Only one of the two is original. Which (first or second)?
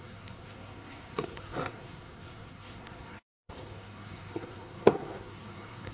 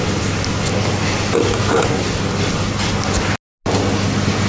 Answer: second